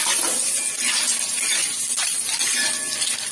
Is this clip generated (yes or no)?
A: no